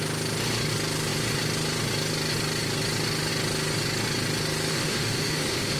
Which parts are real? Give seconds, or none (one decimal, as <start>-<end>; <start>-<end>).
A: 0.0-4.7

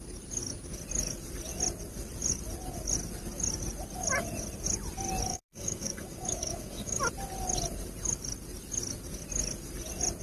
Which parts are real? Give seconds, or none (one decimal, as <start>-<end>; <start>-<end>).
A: 0.0-5.3; 7.0-10.2

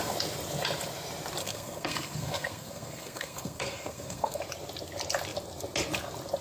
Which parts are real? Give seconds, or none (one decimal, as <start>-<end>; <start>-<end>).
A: 0.0-1.4; 4.4-6.4

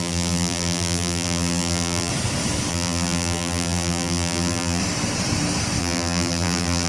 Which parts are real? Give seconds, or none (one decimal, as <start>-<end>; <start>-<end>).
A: 2.1-2.7; 4.8-5.8

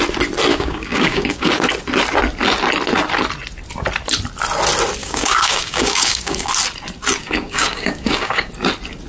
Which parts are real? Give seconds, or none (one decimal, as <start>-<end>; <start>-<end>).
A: 0.0-0.5; 1.5-5.0; 6.5-7.2; 8.5-9.1

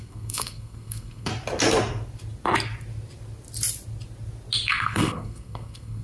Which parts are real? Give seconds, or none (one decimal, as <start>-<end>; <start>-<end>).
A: 1.3-4.7

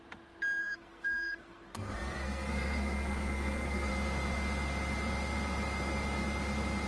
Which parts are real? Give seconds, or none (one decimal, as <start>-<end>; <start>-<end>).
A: 0.0-0.6; 3.9-6.9